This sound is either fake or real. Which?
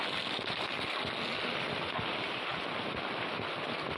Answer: real